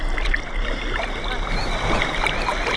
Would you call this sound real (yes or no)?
yes